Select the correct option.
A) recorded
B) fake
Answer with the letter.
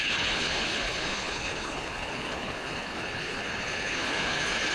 B